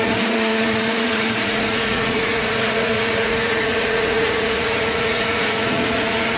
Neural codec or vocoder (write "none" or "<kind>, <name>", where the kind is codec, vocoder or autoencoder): vocoder, Vocos